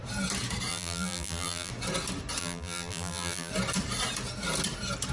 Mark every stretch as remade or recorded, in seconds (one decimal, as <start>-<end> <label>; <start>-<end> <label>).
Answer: 0.0-0.7 recorded; 0.7-1.7 remade; 1.7-2.4 recorded; 2.4-3.5 remade; 3.5-5.1 recorded